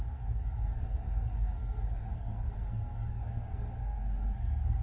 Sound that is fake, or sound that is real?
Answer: fake